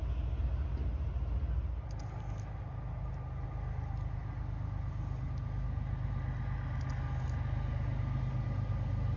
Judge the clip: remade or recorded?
recorded